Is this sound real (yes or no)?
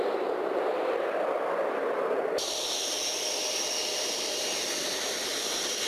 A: yes